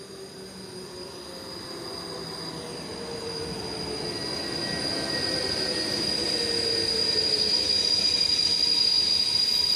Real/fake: real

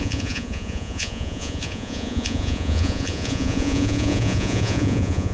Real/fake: fake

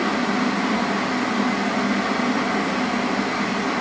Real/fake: real